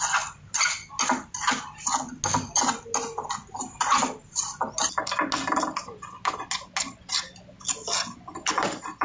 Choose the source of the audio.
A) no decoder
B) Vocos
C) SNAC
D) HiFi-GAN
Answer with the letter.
A